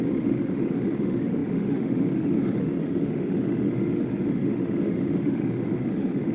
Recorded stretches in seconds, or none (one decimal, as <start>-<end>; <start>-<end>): none